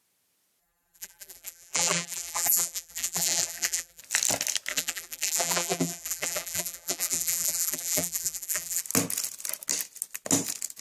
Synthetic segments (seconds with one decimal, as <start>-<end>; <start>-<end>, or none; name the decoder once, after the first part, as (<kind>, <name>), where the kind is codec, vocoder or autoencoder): 0.6-4.0 (vocoder, BigVGAN v2); 4.7-8.8